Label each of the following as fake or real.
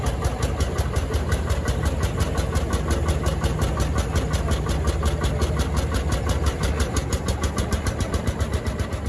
real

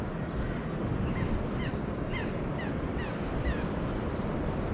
real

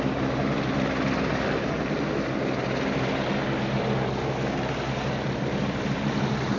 real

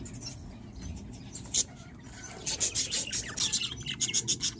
real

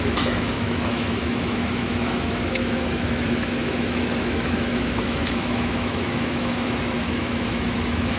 fake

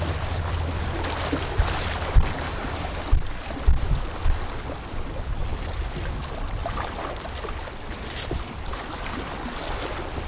real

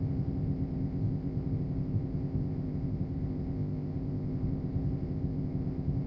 fake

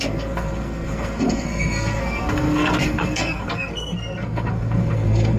fake